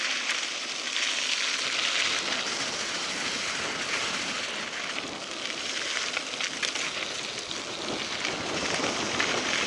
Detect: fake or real real